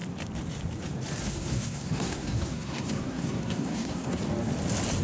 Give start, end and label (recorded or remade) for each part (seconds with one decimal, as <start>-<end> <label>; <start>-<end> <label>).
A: 0.0-1.2 recorded; 1.2-4.2 remade; 4.2-5.0 recorded